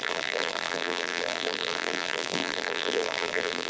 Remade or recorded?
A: remade